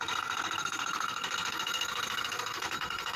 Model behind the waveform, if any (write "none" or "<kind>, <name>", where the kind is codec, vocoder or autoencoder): codec, SNAC